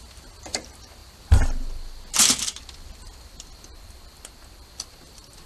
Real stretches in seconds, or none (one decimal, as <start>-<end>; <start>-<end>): 0.0-5.5

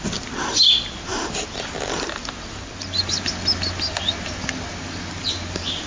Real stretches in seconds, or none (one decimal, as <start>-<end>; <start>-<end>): 0.0-5.9

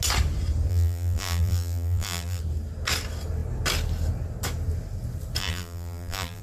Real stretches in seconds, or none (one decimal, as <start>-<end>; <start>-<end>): 0.0-0.7; 2.4-5.4

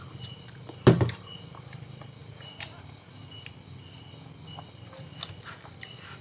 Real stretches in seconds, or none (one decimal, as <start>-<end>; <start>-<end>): 0.0-6.2

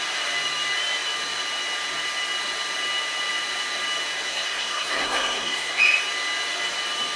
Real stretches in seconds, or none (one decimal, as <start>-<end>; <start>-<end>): 0.0-4.3; 5.8-7.2

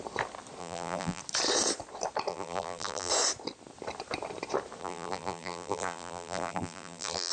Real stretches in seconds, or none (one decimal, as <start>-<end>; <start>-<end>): 0.0-0.6; 1.2-2.3; 3.1-4.8

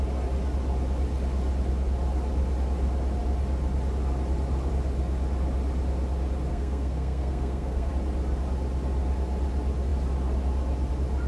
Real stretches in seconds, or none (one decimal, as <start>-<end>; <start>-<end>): 0.0-6.5; 7.9-11.3

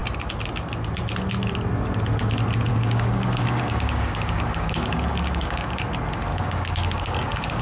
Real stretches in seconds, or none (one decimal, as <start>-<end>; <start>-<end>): 0.0-2.7; 5.7-6.3